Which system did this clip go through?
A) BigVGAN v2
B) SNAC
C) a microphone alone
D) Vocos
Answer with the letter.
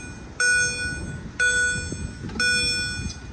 C